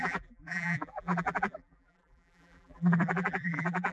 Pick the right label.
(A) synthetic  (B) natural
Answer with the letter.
A